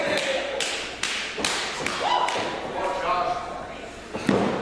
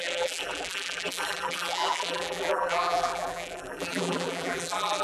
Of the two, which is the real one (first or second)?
first